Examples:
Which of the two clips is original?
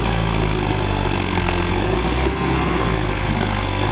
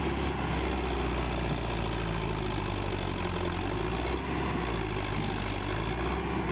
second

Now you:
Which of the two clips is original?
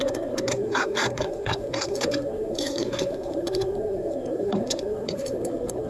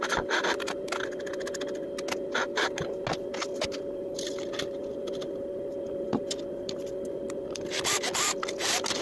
second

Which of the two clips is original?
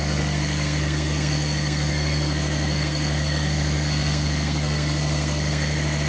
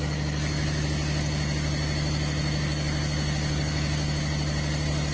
second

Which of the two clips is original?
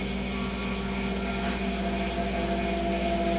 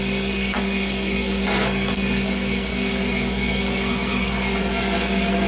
first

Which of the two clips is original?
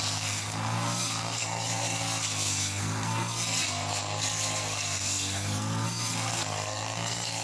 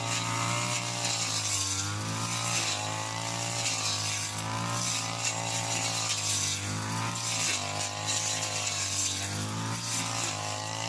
second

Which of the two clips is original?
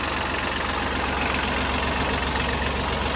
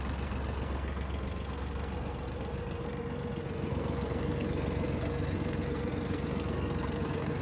first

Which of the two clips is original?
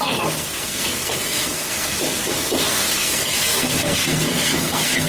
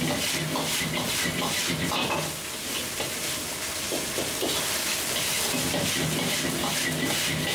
second